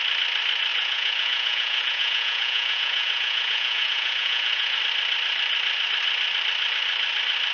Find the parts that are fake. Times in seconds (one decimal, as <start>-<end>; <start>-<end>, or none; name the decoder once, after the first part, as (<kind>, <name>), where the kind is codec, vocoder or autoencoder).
0.7-4.8 (vocoder, Vocos)